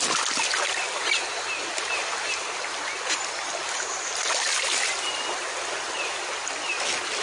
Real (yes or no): yes